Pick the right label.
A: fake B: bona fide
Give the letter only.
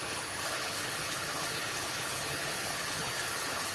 A